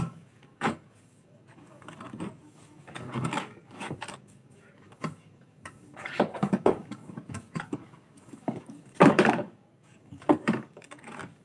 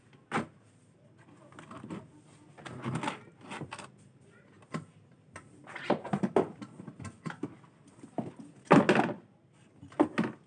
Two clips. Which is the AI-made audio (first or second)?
first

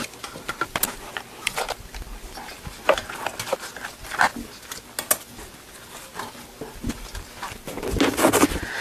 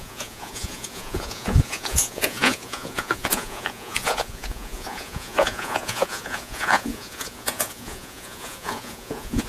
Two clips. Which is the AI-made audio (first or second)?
second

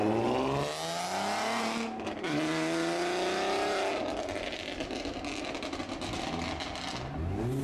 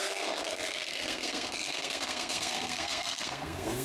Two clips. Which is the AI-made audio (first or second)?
second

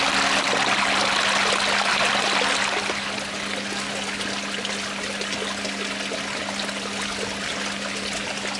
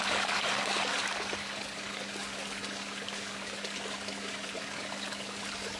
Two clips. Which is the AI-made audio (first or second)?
second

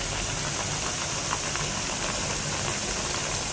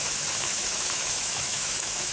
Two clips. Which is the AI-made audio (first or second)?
second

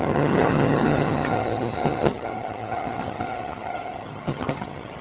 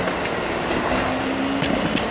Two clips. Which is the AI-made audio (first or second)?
first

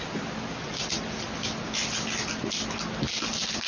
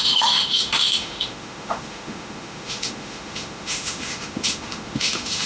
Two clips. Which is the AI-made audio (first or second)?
second